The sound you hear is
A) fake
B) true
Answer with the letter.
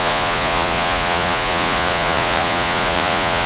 A